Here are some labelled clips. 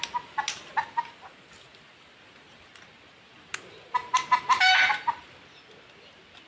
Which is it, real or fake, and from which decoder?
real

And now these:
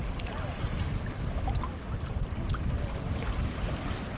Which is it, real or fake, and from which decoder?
real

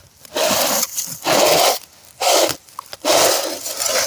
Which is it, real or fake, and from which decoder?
real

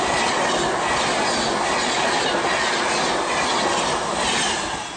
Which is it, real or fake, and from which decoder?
real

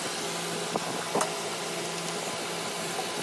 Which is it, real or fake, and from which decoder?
real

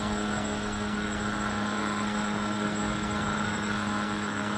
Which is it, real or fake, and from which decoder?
fake, codec, SNAC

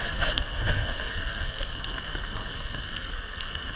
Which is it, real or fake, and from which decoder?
fake, codec, SNAC